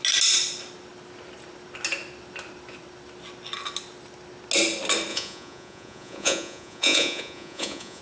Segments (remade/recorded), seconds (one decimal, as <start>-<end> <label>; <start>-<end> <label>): 0.0-5.1 recorded; 5.1-8.0 remade